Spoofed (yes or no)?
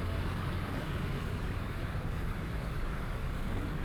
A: yes